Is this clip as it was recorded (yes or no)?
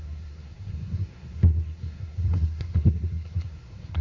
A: no